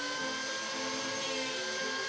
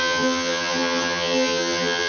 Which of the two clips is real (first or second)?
first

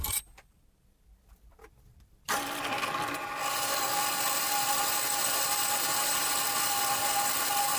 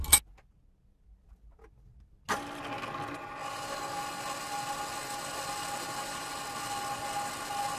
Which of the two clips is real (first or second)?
second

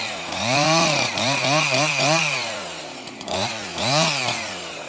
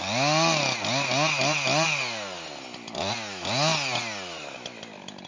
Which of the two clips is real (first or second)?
second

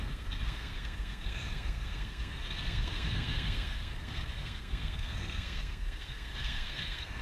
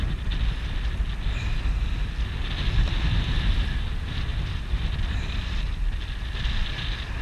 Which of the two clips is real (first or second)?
second